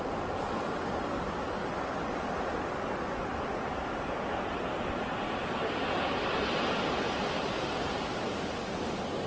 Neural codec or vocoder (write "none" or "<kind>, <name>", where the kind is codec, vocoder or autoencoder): none